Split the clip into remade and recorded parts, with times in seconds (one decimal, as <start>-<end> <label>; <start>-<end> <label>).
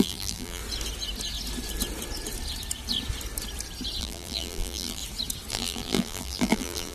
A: 0.0-0.6 remade; 0.6-4.0 recorded; 4.0-5.0 remade; 5.0-5.5 recorded; 5.5-6.9 remade